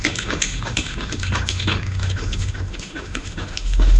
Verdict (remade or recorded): remade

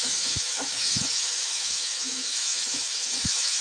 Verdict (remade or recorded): remade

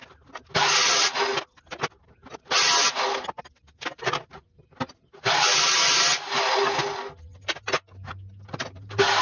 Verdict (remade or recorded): recorded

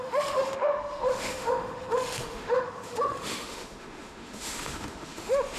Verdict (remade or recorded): remade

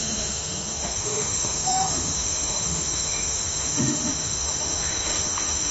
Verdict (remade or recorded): remade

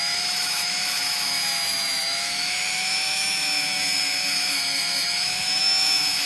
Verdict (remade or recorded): remade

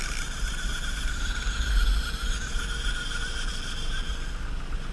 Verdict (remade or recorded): recorded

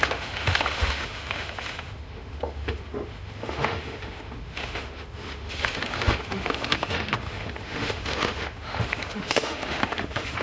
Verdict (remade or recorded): remade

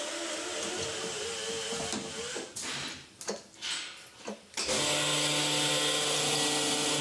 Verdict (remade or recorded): recorded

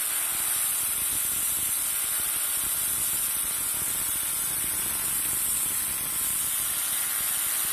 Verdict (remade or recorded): recorded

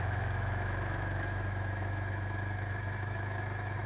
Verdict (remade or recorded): remade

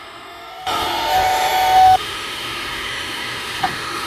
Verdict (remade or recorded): remade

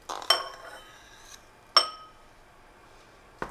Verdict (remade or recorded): recorded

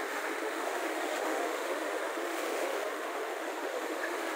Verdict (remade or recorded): remade